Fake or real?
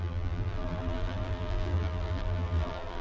fake